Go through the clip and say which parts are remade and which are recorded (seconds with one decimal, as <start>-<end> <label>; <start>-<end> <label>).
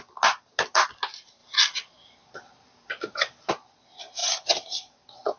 0.0-5.4 recorded